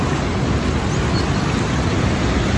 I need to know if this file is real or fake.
real